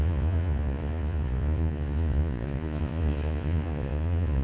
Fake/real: fake